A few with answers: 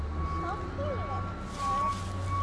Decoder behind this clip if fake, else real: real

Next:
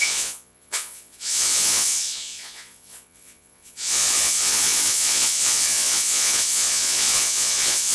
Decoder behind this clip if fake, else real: fake, vocoder, Vocos